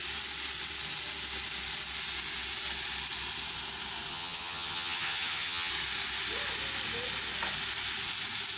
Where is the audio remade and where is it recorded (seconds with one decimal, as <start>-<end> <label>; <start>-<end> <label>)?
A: 0.0-4.1 recorded; 4.1-5.7 remade; 5.7-8.6 recorded

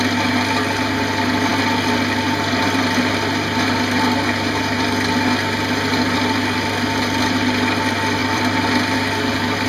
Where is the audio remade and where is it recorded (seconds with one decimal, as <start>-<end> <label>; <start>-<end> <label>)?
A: 0.0-8.2 recorded; 8.2-8.7 remade; 8.7-9.7 recorded

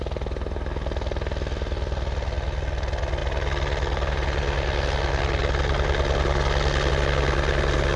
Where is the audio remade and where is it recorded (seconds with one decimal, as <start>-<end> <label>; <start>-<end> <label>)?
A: 0.0-8.0 recorded

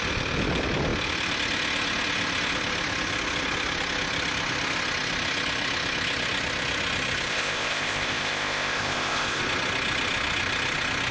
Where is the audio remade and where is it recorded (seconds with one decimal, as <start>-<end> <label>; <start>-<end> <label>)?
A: 0.0-7.3 recorded; 7.3-9.4 remade; 9.4-11.1 recorded